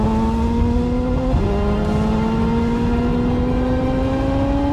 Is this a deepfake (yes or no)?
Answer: no